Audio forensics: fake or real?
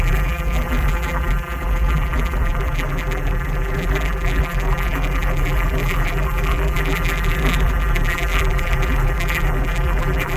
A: fake